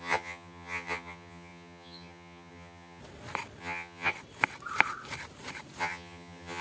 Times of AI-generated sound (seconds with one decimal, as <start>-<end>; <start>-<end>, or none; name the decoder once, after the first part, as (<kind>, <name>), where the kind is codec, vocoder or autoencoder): 0.0-3.0 (vocoder, HiFi-GAN); 3.6-4.1; 5.8-6.6